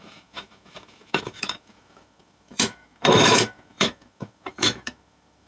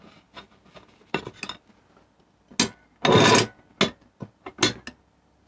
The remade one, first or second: first